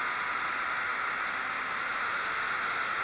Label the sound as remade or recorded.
recorded